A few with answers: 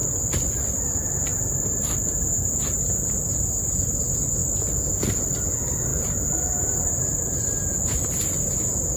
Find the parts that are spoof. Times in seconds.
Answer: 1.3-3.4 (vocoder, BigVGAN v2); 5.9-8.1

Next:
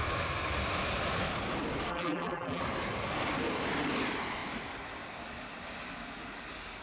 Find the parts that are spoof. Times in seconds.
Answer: 1.9-2.6 (vocoder, BigVGAN v2)

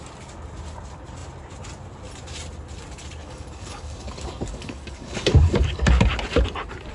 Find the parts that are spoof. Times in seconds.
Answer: 3.2-6.0 (codec, DAC)